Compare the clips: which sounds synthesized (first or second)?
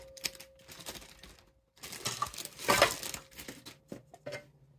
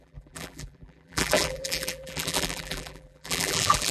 second